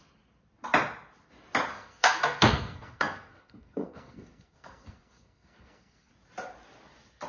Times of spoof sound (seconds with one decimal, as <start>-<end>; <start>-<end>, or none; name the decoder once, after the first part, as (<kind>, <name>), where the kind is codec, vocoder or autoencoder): 1.7-6.1 (codec, SNAC)